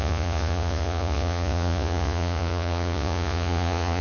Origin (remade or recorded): remade